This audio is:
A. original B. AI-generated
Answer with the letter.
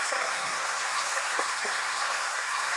B